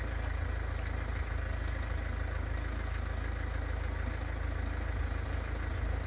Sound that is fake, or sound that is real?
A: real